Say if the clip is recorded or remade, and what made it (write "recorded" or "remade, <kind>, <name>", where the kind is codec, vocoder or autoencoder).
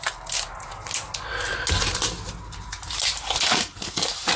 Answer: recorded